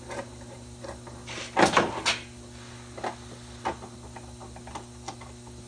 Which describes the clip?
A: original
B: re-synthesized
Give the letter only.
A